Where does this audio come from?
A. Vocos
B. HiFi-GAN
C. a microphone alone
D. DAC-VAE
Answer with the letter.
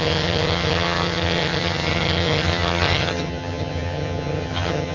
B